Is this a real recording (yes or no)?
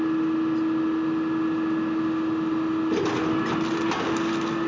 yes